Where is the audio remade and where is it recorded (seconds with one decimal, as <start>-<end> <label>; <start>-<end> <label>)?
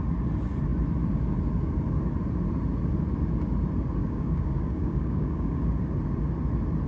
0.0-4.0 recorded; 4.0-5.7 remade; 5.7-6.9 recorded